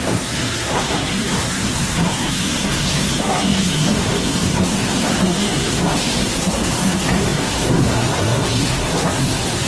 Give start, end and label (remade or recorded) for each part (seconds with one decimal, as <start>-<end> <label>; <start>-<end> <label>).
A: 0.0-9.7 remade